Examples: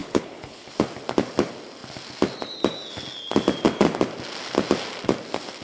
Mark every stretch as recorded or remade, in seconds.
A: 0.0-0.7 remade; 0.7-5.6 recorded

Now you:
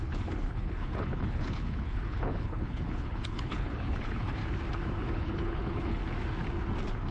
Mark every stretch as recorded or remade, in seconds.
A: 0.0-4.4 remade; 4.4-5.0 recorded; 5.0-6.0 remade; 6.0-7.1 recorded

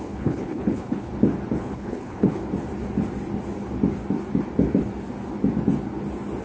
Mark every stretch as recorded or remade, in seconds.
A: 0.0-1.1 remade; 1.1-1.6 recorded; 1.6-2.4 remade; 2.4-6.4 recorded

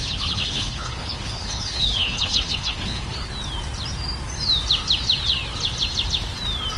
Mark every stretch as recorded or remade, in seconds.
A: 0.0-3.3 remade; 3.3-6.8 recorded

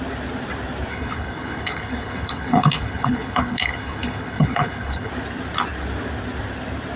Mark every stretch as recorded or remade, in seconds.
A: 0.0-0.9 recorded; 0.9-5.1 remade; 5.1-7.0 recorded

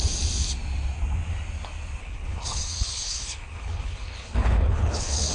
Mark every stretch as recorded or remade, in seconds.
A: 0.0-2.0 recorded; 2.0-5.3 remade